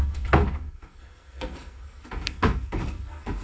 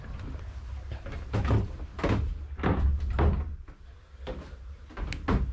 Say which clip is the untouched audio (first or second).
second